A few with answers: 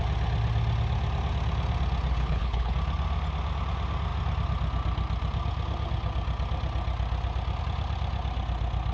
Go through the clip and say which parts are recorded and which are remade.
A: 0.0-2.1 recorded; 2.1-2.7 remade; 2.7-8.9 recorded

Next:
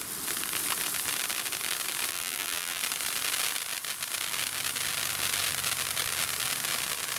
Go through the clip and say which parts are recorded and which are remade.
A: 0.0-2.1 recorded; 2.1-2.8 remade; 2.8-7.2 recorded

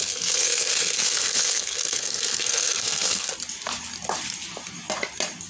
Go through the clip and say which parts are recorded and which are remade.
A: 0.0-3.3 remade; 3.3-5.5 recorded

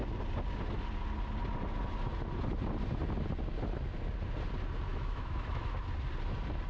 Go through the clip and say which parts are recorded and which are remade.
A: 0.0-4.9 recorded; 4.9-5.8 remade; 5.8-6.7 recorded

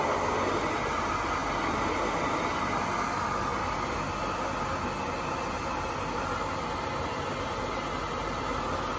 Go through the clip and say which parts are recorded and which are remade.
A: 0.0-9.0 recorded

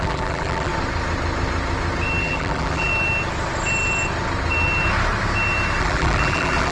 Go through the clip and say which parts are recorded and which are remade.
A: 0.0-0.7 remade; 0.7-2.2 recorded; 2.2-2.9 remade; 2.9-5.8 recorded; 5.8-6.7 remade